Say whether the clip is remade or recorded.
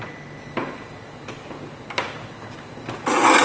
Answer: recorded